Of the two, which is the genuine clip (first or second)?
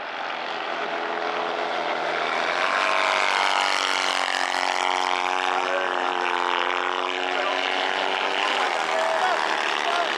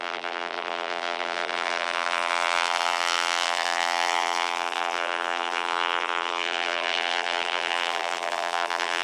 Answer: first